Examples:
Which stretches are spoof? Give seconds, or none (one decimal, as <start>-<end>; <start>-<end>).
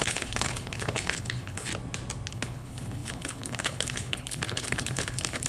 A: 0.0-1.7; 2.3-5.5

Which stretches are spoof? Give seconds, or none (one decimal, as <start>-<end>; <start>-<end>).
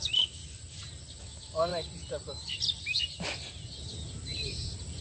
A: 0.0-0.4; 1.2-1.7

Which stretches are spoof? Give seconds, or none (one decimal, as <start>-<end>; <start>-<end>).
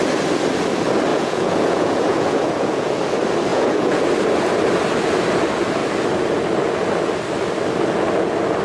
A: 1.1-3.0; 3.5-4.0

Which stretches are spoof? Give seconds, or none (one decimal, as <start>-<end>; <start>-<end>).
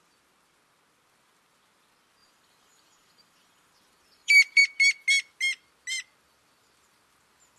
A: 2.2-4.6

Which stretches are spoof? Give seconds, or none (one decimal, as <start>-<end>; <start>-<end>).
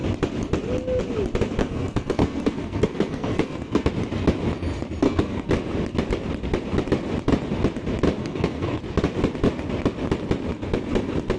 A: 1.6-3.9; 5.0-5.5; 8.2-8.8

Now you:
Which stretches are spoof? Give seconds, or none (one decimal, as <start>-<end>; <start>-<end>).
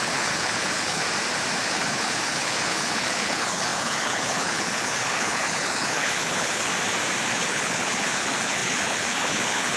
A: 0.0-1.0; 1.6-6.7; 7.3-9.8